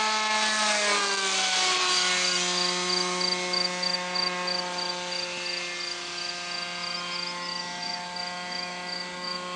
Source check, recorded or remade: recorded